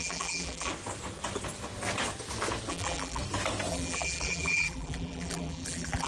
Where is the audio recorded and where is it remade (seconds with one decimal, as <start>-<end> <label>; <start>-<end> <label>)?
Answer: 0.0-0.7 remade; 0.7-2.7 recorded; 2.7-3.2 remade; 3.2-3.7 recorded; 3.7-6.1 remade